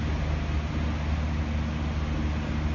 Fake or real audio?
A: real